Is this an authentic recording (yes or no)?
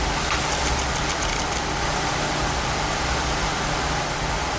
no